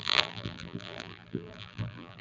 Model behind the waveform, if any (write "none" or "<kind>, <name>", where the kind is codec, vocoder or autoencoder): vocoder, BigVGAN v2